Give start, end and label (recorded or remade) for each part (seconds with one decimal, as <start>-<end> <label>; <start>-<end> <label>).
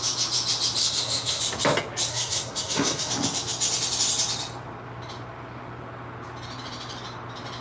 0.0-0.8 recorded; 0.8-1.4 remade; 1.4-2.1 recorded; 2.1-3.1 remade; 3.1-7.6 recorded